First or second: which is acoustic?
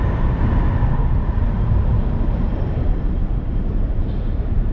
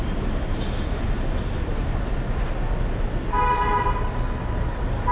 second